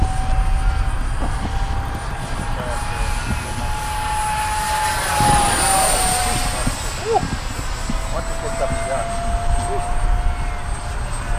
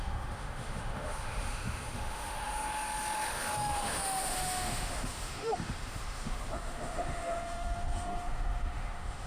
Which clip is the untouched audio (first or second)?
first